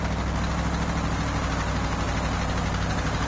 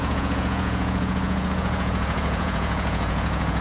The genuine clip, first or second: first